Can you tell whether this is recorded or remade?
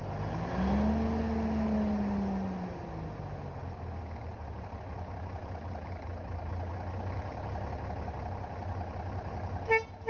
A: recorded